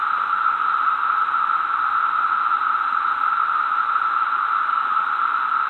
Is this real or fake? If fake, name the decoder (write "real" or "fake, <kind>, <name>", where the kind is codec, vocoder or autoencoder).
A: fake, vocoder, BigVGAN v2